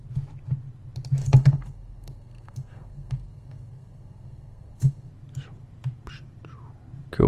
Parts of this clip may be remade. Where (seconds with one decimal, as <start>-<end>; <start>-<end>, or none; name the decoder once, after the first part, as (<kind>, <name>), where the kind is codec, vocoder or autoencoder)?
1.2-5.1 (codec, SNAC)